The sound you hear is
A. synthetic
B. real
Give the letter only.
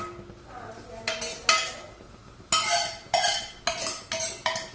B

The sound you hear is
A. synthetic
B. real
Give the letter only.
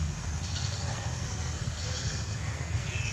A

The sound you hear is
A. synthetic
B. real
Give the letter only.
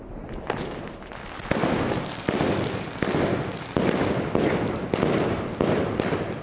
B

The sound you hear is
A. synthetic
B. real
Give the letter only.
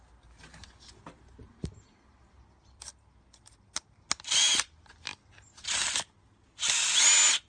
B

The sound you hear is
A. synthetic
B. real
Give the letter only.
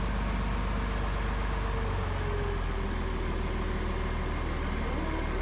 B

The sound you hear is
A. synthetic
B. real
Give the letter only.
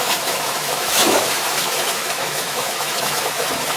A